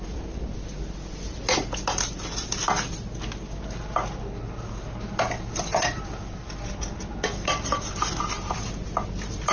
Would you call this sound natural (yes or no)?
yes